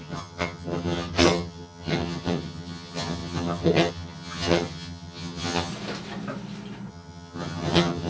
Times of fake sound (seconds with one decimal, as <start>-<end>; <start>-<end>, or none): 0.0-5.7; 6.9-8.1